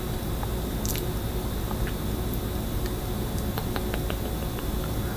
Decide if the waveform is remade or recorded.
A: recorded